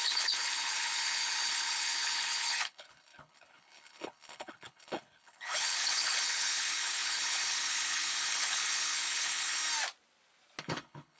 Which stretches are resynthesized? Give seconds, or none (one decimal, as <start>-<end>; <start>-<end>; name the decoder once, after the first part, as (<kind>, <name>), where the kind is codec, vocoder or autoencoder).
0.0-9.6 (codec, HILCodec); 10.6-11.2